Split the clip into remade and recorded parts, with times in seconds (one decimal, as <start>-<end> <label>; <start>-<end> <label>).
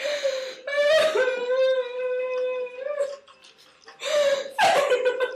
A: 0.0-5.3 recorded